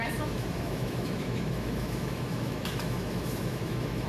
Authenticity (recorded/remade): remade